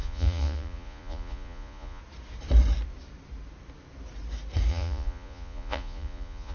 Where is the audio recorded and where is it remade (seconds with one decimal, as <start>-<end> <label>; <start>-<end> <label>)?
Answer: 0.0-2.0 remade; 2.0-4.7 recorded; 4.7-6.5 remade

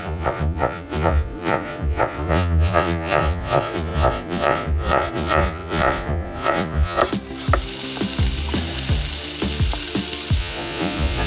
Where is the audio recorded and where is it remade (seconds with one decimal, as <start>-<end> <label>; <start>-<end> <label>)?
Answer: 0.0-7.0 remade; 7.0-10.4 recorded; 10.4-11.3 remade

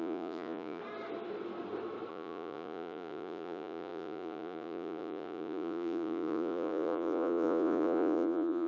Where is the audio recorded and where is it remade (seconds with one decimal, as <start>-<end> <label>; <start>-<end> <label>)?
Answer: 0.0-0.8 remade; 0.8-2.1 recorded; 2.1-8.7 remade

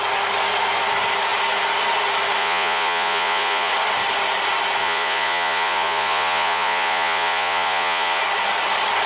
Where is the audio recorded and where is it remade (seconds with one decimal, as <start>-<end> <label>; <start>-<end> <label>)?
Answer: 0.0-2.4 recorded; 2.4-3.7 remade; 3.7-4.8 recorded; 4.8-8.2 remade; 8.2-9.1 recorded